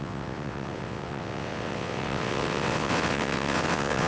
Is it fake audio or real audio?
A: fake